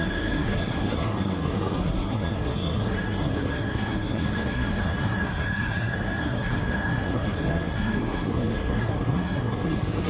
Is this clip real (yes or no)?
no